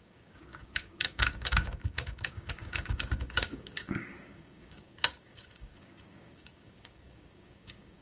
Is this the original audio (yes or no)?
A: no